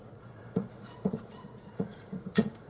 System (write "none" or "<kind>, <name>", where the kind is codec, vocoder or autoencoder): vocoder, Vocos